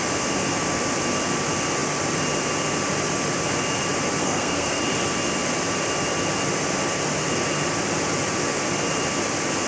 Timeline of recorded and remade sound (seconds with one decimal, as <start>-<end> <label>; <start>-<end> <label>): 0.0-4.2 recorded; 4.2-4.8 remade; 4.8-9.7 recorded